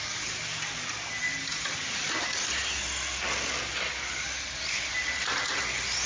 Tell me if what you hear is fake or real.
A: real